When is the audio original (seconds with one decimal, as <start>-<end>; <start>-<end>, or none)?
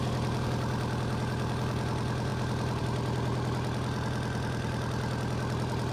0.0-5.9